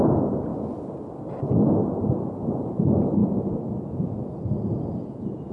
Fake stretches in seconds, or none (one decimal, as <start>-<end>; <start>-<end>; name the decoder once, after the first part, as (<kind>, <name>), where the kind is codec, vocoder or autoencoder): 3.2-5.5 (vocoder, Vocos)